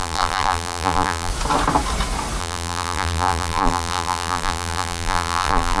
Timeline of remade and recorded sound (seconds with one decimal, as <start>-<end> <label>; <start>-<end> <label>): 0.0-1.3 remade; 1.3-2.4 recorded; 2.4-5.8 remade